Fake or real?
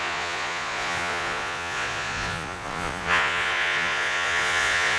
fake